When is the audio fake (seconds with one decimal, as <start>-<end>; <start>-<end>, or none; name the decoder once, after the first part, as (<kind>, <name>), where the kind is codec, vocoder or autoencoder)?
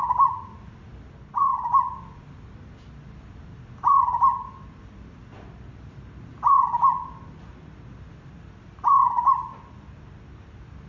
none